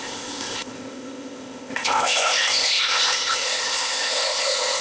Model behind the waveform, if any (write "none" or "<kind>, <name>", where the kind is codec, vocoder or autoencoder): codec, ZipCodec